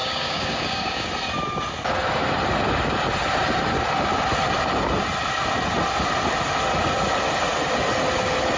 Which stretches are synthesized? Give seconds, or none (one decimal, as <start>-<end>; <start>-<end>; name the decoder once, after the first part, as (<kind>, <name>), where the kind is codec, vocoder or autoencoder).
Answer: 0.0-1.1 (codec, DAC)